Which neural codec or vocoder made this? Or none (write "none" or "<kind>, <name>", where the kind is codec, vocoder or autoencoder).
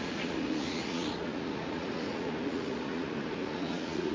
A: vocoder, Vocos